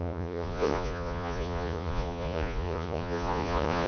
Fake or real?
fake